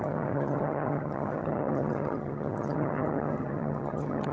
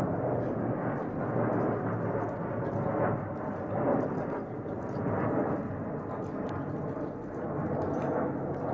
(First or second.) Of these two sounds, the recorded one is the second